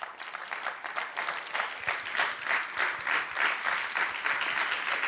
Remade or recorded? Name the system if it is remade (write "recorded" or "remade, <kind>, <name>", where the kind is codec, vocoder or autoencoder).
recorded